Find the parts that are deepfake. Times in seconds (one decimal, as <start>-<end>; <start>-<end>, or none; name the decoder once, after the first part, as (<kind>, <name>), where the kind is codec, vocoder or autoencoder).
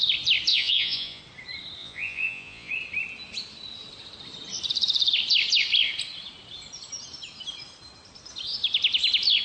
0.5-1.2 (vocoder, Vocos); 1.8-2.7